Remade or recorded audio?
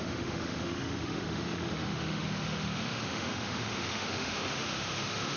remade